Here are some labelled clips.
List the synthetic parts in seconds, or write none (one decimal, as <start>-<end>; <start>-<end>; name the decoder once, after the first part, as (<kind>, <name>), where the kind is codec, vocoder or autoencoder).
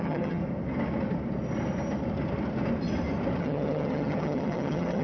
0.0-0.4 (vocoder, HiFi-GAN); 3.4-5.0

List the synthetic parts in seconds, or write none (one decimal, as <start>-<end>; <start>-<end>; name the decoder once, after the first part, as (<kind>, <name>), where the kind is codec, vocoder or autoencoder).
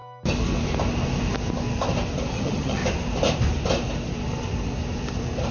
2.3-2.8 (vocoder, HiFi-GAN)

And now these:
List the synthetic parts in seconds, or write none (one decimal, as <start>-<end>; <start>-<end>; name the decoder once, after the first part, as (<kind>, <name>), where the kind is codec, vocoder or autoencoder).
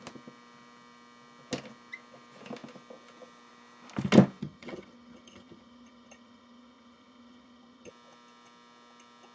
4.4-7.9 (vocoder, HiFi-GAN)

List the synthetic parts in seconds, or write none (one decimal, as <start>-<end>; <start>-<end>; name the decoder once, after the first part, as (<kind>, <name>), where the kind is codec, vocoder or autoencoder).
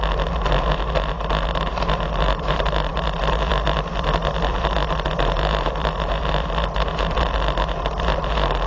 none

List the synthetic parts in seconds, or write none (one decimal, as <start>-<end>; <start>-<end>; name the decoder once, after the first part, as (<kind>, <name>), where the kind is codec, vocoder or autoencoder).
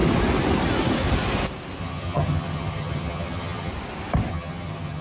1.8-3.7 (vocoder, HiFi-GAN); 4.3-5.0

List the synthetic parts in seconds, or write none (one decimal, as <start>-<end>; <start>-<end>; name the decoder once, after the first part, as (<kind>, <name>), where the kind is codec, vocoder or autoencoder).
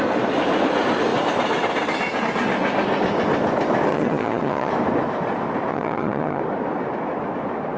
3.9-4.7 (vocoder, HiFi-GAN); 5.7-6.4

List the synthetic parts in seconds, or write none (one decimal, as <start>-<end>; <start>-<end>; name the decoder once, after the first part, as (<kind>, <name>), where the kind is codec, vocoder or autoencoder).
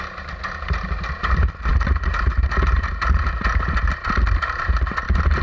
none